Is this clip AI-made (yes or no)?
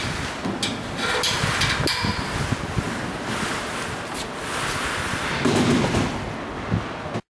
no